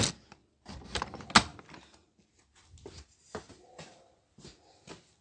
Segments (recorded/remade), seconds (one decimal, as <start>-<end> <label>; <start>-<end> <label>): 0.0-5.2 recorded